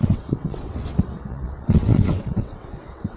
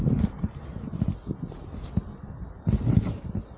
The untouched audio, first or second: second